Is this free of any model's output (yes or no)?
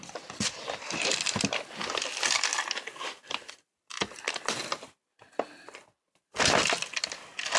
yes